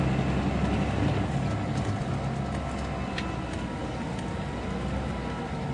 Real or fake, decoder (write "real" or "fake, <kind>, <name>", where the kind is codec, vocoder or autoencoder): real